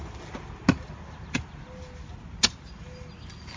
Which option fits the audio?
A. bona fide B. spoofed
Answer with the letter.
A